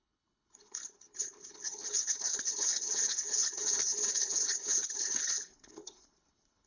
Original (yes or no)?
no